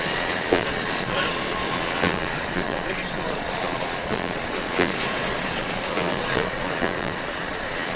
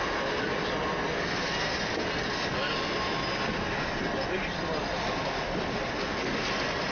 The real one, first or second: second